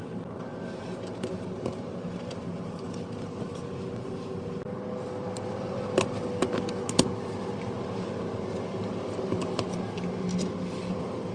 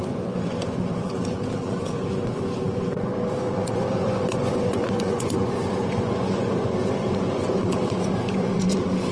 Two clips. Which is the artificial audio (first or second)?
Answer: second